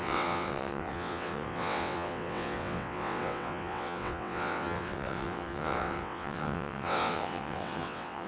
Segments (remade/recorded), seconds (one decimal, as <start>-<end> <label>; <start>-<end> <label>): 0.0-8.3 remade